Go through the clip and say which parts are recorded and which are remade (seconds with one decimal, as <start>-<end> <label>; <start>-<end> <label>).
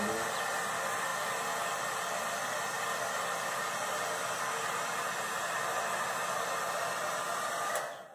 0.0-8.1 recorded